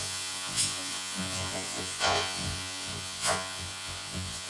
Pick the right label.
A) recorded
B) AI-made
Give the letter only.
B